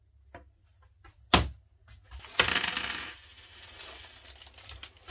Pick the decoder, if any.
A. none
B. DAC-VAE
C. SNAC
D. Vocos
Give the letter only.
A